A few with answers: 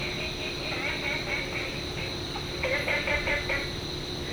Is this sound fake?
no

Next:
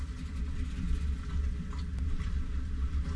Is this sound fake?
no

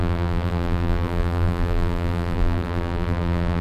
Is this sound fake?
yes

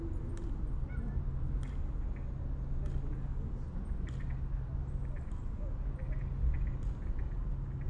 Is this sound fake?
no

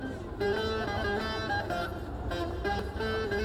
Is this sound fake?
yes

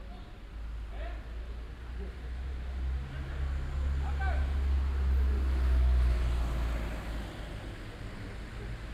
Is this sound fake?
no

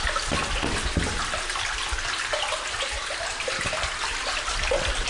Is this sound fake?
no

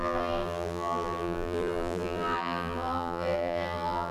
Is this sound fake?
yes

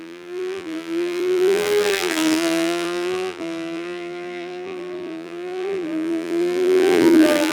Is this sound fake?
yes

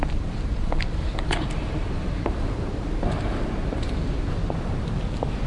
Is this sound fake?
yes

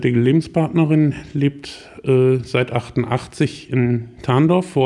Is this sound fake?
no